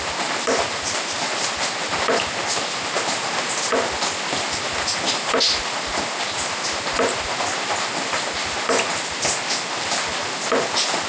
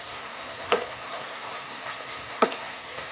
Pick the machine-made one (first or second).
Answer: second